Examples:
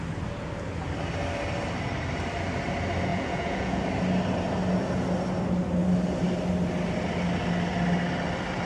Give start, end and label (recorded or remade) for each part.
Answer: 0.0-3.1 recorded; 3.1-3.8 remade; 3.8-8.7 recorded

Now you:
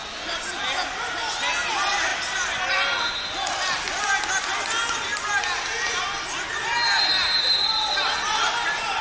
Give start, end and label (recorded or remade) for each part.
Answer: 0.0-9.0 recorded

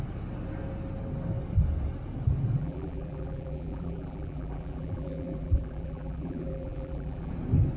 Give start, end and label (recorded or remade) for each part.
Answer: 0.0-2.6 recorded; 2.6-7.3 remade; 7.3-7.8 recorded

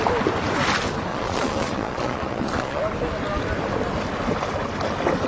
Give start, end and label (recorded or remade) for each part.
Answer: 0.0-1.1 recorded; 1.1-2.8 remade; 2.8-5.3 recorded

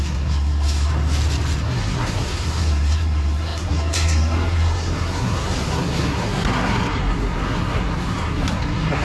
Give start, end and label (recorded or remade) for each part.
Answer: 0.0-0.9 remade; 0.9-1.6 recorded; 1.6-9.0 remade